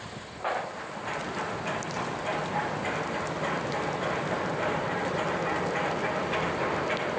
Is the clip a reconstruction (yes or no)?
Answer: no